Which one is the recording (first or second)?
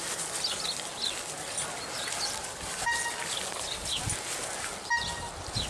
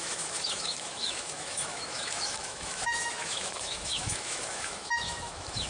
first